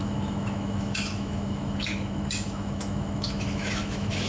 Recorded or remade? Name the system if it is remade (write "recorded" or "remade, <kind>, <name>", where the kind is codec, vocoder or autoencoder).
remade, autoencoder, DAC-VAE